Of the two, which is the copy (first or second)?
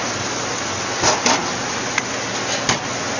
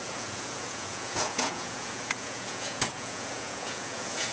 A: second